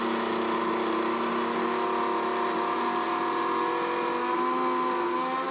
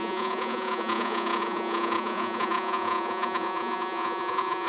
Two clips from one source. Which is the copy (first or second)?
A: second